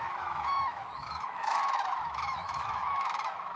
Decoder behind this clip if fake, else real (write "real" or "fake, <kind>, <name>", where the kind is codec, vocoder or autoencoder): fake, autoencoder, DAC-VAE